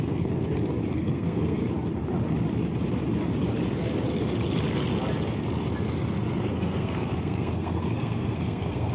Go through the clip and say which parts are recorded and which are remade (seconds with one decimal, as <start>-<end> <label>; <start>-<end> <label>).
0.0-0.4 remade; 0.4-1.0 recorded; 1.0-1.6 remade; 1.6-6.5 recorded; 6.5-8.9 remade